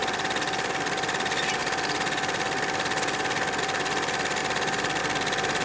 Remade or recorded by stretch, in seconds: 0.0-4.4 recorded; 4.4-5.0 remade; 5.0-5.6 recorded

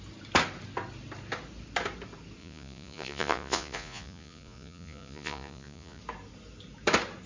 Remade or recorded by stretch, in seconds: 0.0-2.4 recorded; 2.4-6.0 remade; 6.0-7.3 recorded

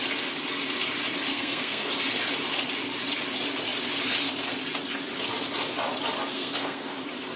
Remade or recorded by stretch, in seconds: 0.0-1.3 recorded; 1.3-1.9 remade; 1.9-6.3 recorded; 6.3-7.0 remade; 7.0-7.4 recorded

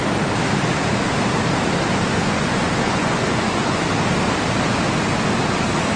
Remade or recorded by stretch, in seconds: 0.0-2.1 recorded; 2.1-3.8 remade; 3.8-6.0 recorded

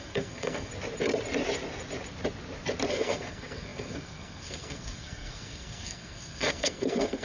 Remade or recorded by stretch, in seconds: 0.0-0.7 remade; 0.7-2.9 recorded; 2.9-7.2 remade

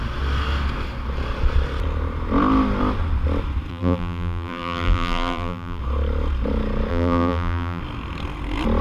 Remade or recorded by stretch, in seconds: 0.0-3.7 recorded; 3.7-5.8 remade; 5.8-6.9 recorded; 6.9-7.8 remade; 7.8-8.8 recorded

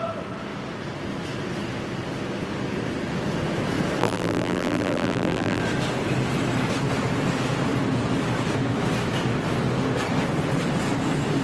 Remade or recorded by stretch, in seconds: 0.0-4.0 recorded; 4.0-5.6 remade; 5.6-11.4 recorded

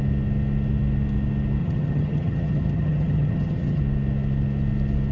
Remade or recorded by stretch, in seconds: 0.0-1.6 recorded; 1.6-3.8 remade; 3.8-5.1 recorded